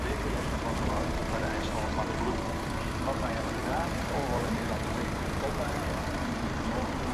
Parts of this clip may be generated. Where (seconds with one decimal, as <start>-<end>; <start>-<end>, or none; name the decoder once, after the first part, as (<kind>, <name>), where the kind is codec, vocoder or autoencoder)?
0.0-1.2 (vocoder, BigVGAN v2); 3.2-7.1